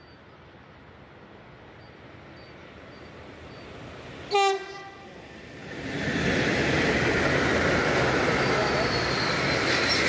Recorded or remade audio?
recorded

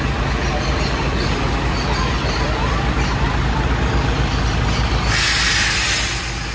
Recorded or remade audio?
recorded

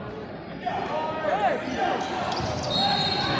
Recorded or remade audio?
recorded